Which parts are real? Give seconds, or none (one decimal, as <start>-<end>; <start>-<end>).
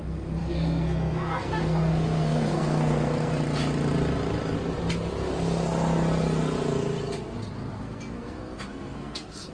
3.3-7.7